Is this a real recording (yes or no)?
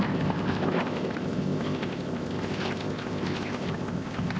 no